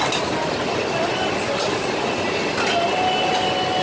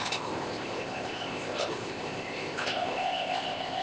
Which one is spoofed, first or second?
second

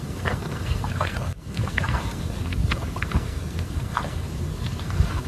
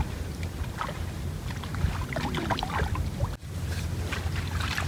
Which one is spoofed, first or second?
first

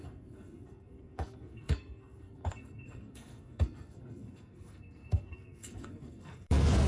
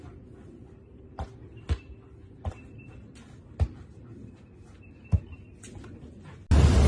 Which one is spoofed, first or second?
first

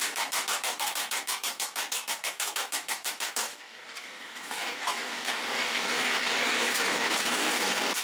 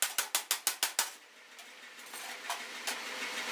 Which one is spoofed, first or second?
first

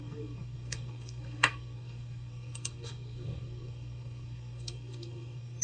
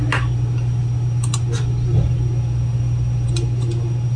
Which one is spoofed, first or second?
first